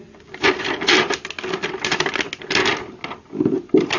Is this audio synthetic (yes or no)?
no